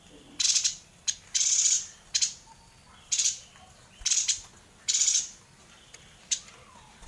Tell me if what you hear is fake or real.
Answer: real